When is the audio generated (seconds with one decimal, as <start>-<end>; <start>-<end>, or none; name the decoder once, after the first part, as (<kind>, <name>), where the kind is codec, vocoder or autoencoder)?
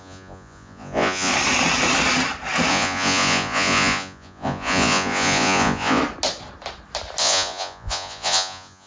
0.0-1.3 (vocoder, Vocos); 2.7-6.0; 7.2-8.9